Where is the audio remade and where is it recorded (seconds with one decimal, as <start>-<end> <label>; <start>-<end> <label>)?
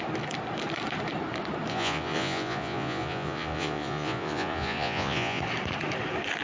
0.0-1.7 recorded; 1.7-5.4 remade; 5.4-6.4 recorded